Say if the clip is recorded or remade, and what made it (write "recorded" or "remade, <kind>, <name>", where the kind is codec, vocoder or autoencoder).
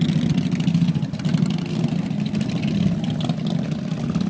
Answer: recorded